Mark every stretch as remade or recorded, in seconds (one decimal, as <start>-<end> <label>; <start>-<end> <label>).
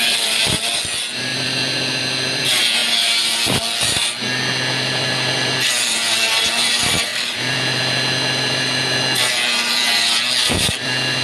0.0-2.8 remade; 2.8-4.7 recorded; 4.7-11.2 remade